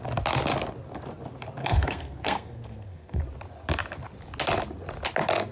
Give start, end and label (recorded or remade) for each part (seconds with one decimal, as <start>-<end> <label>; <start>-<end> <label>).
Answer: 0.0-1.6 recorded; 1.6-3.2 remade; 3.2-5.5 recorded